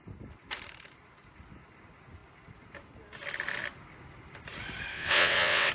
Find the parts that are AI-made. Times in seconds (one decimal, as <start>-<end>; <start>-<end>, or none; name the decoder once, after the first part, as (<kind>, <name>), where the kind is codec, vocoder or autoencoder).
4.9-5.7 (vocoder, WaveNeXt)